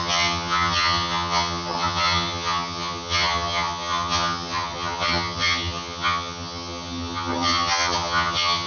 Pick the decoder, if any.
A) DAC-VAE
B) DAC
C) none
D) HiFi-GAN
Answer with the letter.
D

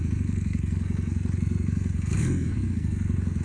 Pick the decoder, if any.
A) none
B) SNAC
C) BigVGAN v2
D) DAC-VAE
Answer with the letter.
B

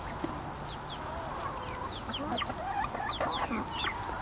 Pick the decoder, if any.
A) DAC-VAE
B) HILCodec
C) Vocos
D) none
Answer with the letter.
D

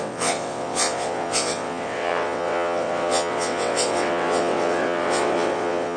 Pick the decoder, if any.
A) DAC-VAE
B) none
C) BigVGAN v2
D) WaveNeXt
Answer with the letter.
D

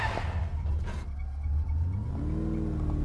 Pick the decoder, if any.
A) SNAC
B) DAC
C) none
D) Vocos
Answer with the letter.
C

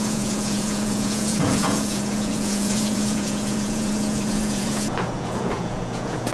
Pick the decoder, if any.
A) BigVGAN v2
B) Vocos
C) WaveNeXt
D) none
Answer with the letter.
B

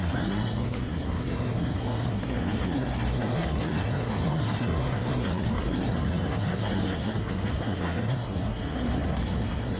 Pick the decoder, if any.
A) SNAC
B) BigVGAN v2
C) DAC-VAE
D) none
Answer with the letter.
A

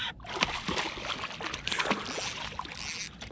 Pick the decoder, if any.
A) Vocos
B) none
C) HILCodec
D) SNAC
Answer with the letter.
B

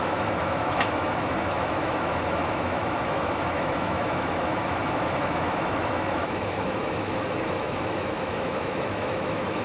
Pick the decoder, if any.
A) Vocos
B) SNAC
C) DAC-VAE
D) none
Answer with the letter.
C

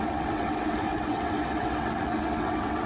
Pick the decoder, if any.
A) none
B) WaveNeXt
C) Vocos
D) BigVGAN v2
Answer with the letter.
B